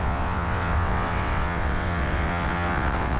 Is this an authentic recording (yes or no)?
no